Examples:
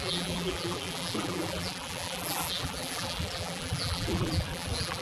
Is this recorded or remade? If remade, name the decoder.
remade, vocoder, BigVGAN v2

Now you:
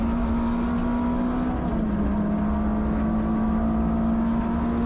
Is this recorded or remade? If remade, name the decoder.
recorded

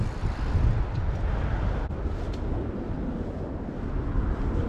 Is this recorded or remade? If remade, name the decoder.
recorded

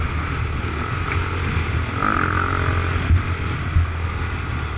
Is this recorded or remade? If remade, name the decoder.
recorded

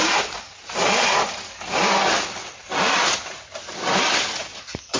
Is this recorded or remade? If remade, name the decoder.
recorded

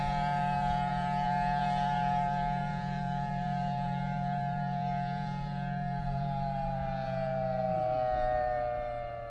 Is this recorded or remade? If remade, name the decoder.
remade, vocoder, BigVGAN v2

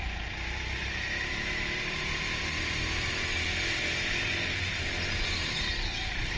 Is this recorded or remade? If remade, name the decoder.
remade, vocoder, BigVGAN v2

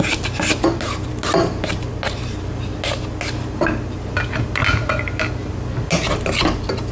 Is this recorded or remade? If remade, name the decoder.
recorded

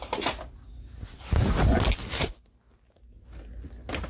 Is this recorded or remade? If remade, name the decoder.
recorded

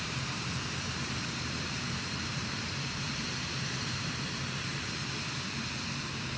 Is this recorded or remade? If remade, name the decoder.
remade, vocoder, BigVGAN v2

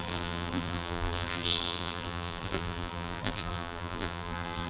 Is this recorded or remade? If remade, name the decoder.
remade, vocoder, BigVGAN v2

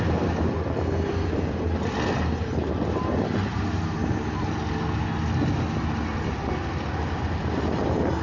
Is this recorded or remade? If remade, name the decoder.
recorded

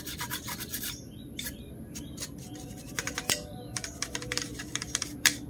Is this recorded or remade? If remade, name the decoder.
remade, vocoder, BigVGAN v2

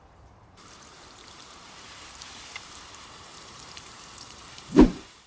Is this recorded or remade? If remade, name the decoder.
remade, vocoder, BigVGAN v2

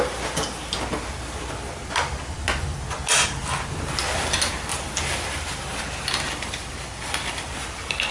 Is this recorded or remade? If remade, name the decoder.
recorded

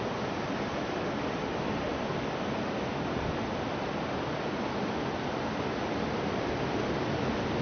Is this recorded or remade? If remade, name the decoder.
recorded